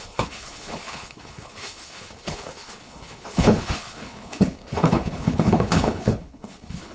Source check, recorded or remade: remade